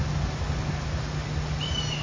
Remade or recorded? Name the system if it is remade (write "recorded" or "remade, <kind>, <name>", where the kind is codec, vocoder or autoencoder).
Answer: recorded